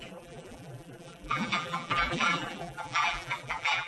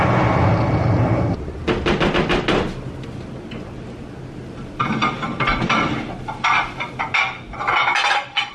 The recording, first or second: second